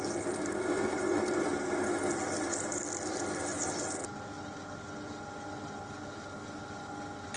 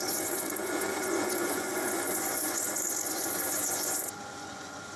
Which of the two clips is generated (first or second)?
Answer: second